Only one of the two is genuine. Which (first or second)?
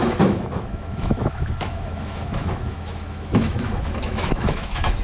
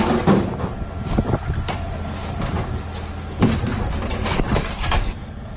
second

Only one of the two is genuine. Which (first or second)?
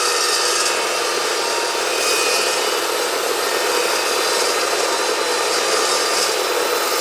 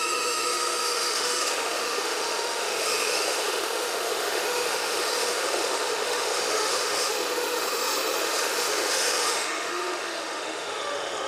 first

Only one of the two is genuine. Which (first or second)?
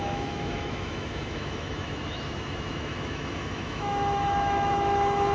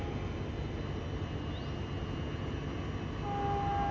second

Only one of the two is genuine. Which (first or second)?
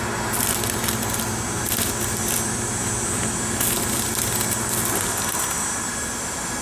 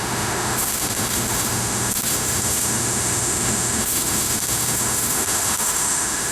first